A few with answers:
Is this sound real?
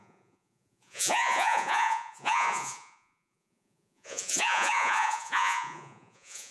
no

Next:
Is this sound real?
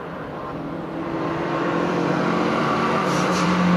no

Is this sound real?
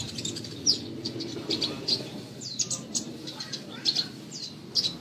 no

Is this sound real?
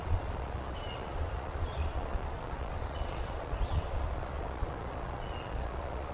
no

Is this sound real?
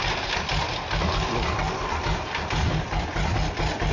yes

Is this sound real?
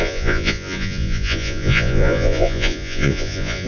no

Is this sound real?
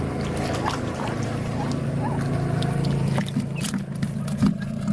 yes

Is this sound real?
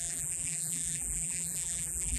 no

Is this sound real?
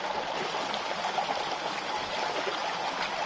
yes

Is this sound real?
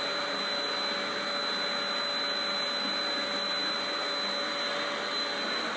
yes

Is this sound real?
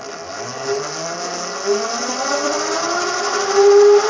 yes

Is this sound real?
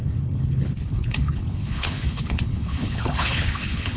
no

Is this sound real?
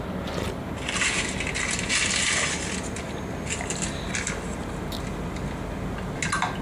yes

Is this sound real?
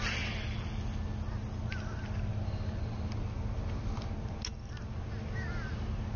yes